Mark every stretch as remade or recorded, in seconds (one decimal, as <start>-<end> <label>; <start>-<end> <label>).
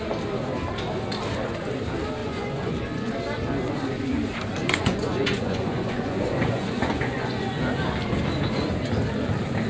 0.0-2.2 recorded; 2.2-3.1 remade; 3.1-4.6 recorded; 4.6-7.6 remade; 7.6-9.7 recorded